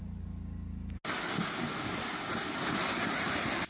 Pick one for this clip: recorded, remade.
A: recorded